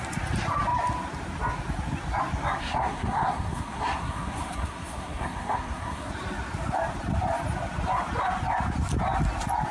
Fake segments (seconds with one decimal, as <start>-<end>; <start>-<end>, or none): 2.6-6.1